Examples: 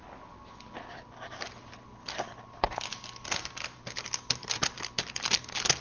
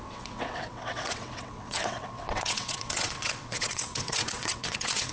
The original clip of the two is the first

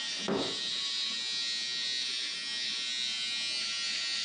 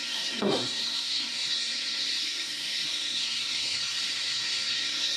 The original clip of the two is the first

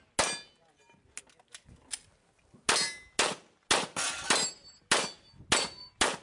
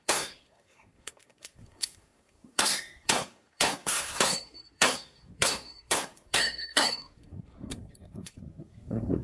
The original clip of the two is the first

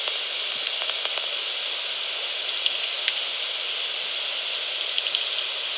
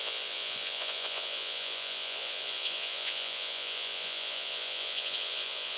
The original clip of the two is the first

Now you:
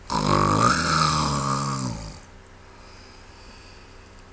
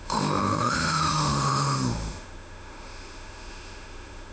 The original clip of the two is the first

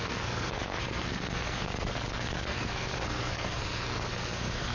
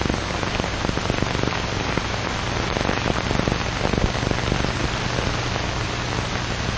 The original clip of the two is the second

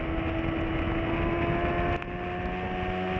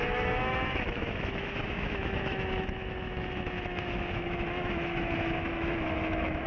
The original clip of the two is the first